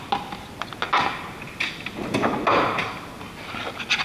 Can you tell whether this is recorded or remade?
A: recorded